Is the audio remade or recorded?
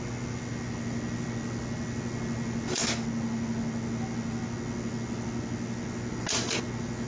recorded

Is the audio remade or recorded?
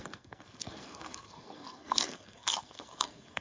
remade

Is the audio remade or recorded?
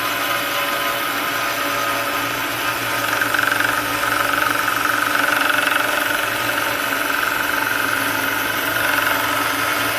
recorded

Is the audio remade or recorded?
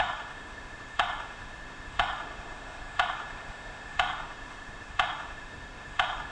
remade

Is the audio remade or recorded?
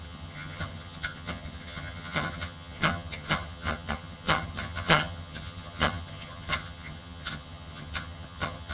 remade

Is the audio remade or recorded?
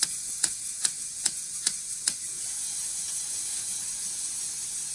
remade